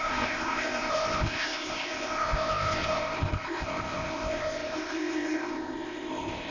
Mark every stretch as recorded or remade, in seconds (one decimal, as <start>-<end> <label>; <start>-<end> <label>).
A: 0.0-6.5 remade